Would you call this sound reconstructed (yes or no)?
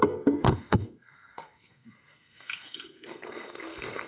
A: yes